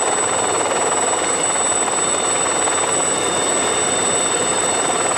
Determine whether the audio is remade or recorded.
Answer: recorded